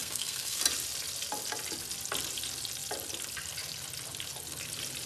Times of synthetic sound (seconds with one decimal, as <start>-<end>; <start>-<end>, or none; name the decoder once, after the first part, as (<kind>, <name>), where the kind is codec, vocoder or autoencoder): 0.0-0.6 (codec, SNAC)